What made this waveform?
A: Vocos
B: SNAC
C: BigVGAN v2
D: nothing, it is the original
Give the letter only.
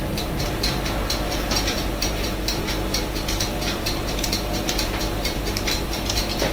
C